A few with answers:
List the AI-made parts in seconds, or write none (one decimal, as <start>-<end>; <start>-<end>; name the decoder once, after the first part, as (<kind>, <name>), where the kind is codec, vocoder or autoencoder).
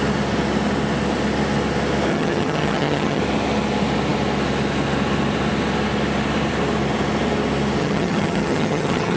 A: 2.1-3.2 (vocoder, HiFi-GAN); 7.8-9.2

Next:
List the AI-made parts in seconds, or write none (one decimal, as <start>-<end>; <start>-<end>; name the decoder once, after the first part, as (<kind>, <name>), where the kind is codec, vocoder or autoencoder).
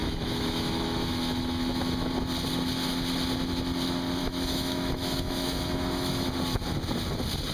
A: 0.0-2.1 (autoencoder, DAC-VAE); 4.2-6.3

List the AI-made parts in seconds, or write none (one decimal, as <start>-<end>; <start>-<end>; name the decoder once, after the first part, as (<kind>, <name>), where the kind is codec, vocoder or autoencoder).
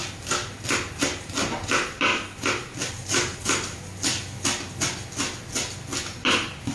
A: 1.0-2.1 (vocoder, BigVGAN v2); 2.9-3.9; 6.0-6.7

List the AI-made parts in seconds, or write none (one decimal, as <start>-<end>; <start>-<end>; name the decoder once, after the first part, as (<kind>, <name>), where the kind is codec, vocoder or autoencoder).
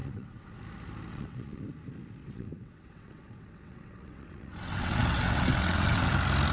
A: 0.0-0.6 (vocoder, WaveNeXt); 1.1-1.6; 2.2-6.1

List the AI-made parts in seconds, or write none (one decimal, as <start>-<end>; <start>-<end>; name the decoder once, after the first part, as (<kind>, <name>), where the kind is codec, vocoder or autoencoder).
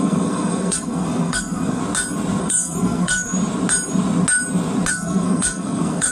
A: 0.0-1.8 (codec, SNAC); 2.4-3.3; 4.9-6.1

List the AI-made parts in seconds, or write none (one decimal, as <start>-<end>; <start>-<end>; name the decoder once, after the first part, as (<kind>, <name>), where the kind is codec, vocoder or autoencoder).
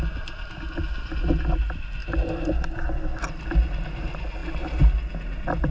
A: none